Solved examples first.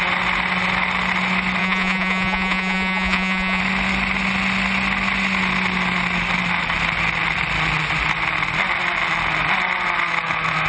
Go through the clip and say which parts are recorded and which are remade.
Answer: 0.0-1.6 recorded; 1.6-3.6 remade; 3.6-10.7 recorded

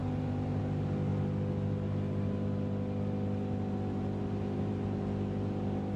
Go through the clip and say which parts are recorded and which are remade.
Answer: 0.0-6.0 recorded